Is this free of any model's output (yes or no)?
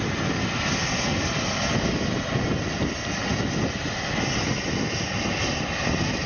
yes